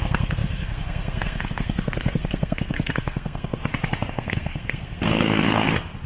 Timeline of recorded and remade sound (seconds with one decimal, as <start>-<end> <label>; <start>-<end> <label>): 0.0-3.6 remade; 3.6-4.1 recorded; 4.1-6.1 remade